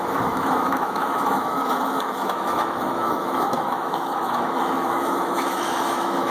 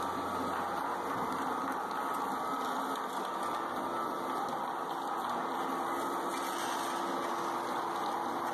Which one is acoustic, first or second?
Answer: second